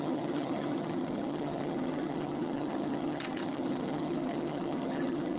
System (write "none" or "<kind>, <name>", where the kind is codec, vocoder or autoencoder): vocoder, HiFi-GAN